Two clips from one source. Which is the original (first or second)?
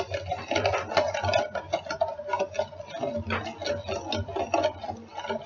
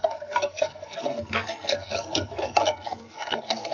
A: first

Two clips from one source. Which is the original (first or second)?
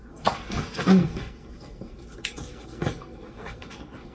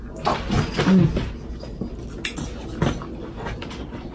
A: second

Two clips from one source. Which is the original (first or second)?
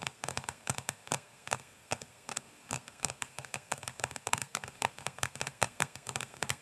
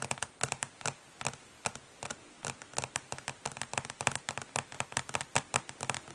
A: second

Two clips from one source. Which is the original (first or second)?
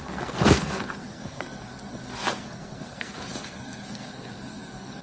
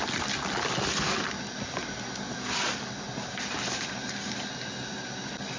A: second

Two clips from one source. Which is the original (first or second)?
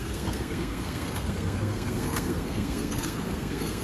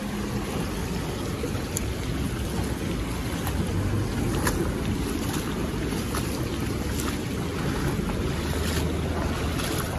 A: second